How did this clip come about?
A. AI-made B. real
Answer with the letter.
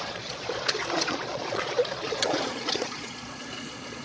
A